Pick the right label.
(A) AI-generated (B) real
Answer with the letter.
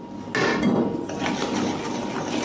B